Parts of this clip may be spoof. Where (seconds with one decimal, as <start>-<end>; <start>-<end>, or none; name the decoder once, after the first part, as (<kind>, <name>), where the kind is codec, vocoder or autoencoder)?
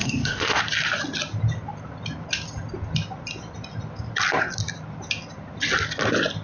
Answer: 0.0-0.6 (codec, ZipCodec)